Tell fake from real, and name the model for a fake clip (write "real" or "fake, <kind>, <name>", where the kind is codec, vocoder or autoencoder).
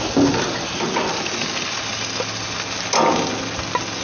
real